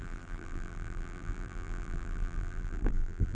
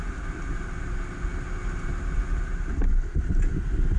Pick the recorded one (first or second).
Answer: second